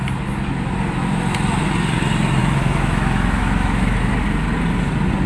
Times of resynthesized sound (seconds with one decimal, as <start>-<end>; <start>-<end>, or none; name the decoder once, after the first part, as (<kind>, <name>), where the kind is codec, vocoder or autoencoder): 2.4-4.1 (autoencoder, DAC-VAE)